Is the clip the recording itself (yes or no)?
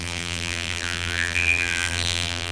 no